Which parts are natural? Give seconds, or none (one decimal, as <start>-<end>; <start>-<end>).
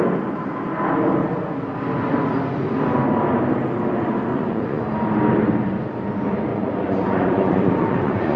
0.0-4.3; 4.8-6.5